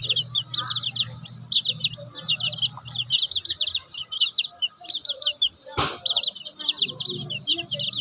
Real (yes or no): yes